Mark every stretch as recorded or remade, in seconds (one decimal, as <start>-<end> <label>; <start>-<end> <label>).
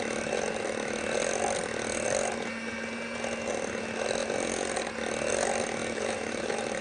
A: 0.0-5.8 recorded; 5.8-6.8 remade